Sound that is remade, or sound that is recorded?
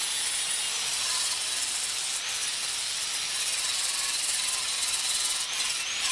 recorded